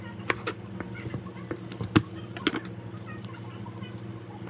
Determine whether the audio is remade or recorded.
recorded